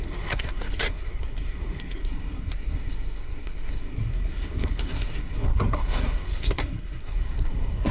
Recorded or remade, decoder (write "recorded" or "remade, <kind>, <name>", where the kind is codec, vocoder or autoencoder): remade, codec, SNAC